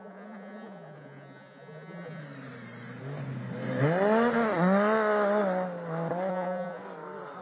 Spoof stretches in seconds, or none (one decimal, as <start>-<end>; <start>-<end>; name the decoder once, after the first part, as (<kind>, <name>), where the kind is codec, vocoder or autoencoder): 0.0-2.2 (vocoder, Vocos); 6.3-6.8